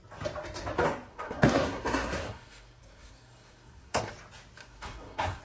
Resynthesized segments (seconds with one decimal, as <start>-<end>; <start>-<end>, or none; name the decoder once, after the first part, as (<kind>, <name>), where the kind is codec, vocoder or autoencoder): 1.1-4.1 (codec, SNAC); 4.6-5.4